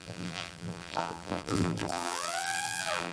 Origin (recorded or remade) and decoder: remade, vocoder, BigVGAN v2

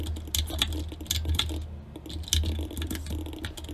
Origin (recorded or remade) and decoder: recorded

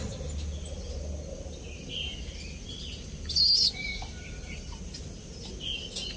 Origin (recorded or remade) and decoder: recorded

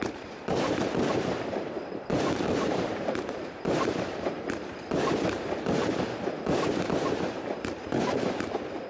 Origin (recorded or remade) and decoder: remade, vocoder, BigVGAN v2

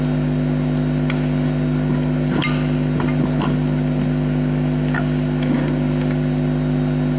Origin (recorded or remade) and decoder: recorded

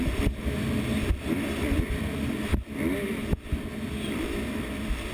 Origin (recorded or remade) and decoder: recorded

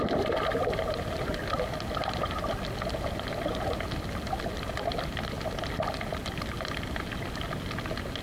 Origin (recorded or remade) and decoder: recorded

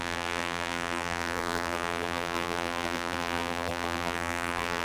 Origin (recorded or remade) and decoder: remade, vocoder, BigVGAN v2